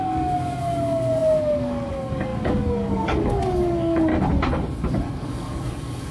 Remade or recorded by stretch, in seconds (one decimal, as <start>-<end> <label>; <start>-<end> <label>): 0.0-4.1 remade; 4.1-5.1 recorded; 5.1-6.1 remade